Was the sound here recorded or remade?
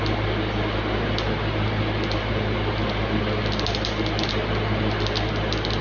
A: recorded